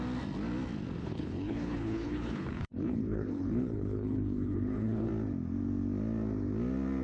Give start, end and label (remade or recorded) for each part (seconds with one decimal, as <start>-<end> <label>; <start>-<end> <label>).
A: 0.0-1.0 recorded; 1.0-5.1 remade; 5.1-7.0 recorded